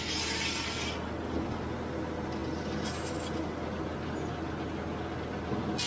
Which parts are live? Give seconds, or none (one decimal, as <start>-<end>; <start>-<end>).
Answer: 0.0-5.9